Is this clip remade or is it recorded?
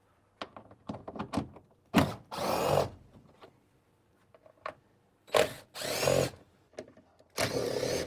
recorded